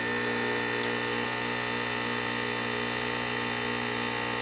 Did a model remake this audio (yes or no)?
no